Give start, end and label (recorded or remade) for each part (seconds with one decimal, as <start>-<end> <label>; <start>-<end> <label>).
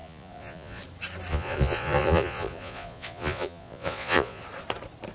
0.0-0.8 remade; 0.8-1.3 recorded; 1.3-4.4 remade; 4.4-5.1 recorded